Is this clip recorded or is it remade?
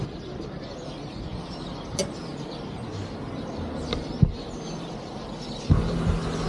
recorded